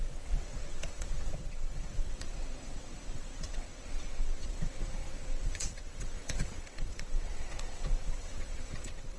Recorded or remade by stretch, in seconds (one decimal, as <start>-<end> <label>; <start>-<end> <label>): 0.0-9.2 remade